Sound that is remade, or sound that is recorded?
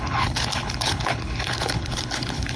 remade